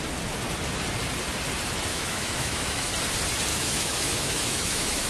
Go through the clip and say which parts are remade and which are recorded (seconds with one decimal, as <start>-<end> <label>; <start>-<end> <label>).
0.0-1.9 recorded; 1.9-2.9 remade; 2.9-3.5 recorded; 3.5-5.1 remade